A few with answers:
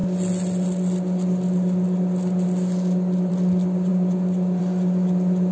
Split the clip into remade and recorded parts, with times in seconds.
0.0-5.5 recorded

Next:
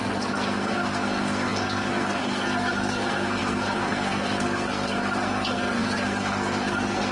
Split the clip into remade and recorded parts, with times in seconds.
0.0-7.1 remade

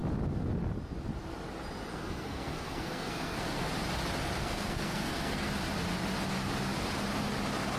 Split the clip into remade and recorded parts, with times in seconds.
0.0-1.9 recorded; 1.9-3.7 remade; 3.7-4.4 recorded; 4.4-5.5 remade; 5.5-7.8 recorded

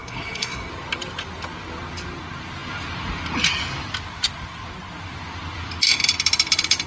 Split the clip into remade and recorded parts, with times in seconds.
0.0-0.7 remade; 0.7-6.9 recorded

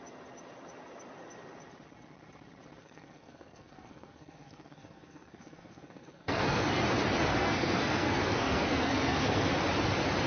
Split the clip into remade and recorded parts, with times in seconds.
0.0-2.8 recorded; 2.8-6.8 remade; 6.8-7.3 recorded; 7.3-9.5 remade; 9.5-10.3 recorded

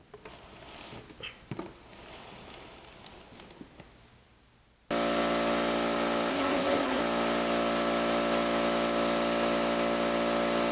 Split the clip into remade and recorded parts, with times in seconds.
0.0-6.3 recorded; 6.3-7.0 remade; 7.0-10.7 recorded

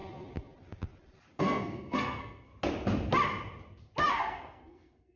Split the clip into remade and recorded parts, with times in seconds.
0.0-1.4 recorded; 1.4-2.5 remade; 2.5-4.1 recorded; 4.1-5.2 remade

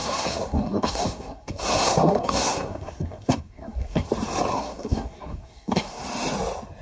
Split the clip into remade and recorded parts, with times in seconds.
0.0-4.1 remade; 4.1-4.5 recorded; 4.5-6.0 remade; 6.0-6.8 recorded